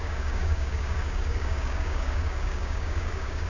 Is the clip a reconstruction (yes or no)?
yes